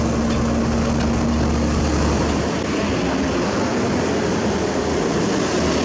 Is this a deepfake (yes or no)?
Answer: no